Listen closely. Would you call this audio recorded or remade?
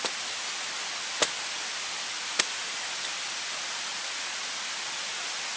recorded